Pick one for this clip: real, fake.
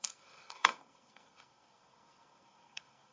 fake